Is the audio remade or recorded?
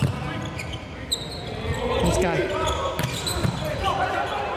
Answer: recorded